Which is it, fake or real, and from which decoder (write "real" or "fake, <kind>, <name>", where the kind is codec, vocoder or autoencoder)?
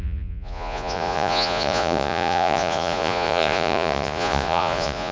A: fake, vocoder, Vocos